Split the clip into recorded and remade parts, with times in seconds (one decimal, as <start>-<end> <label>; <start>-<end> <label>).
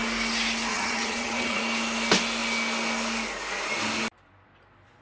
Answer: 0.0-0.7 recorded; 0.7-1.6 remade; 1.6-5.0 recorded